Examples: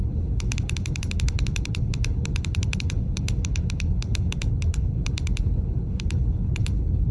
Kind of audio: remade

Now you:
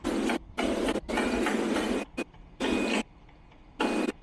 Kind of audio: recorded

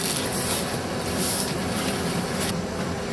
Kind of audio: recorded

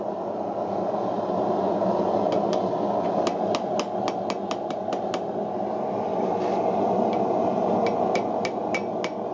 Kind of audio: recorded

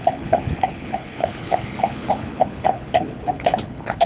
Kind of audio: remade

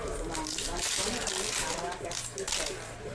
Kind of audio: recorded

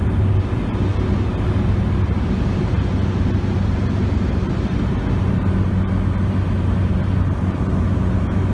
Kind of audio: recorded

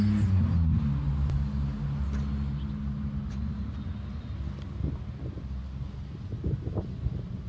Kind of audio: recorded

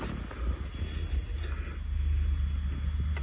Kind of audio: recorded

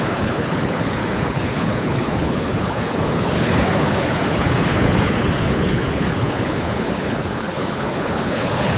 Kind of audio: remade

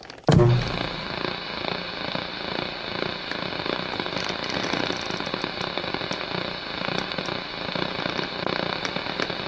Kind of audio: recorded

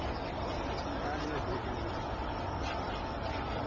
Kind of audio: recorded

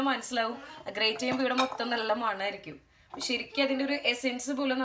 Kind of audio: recorded